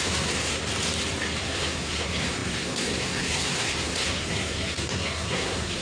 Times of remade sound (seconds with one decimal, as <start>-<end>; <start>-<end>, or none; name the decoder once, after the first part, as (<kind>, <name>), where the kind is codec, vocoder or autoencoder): 0.0-0.6 (codec, SNAC); 1.4-5.8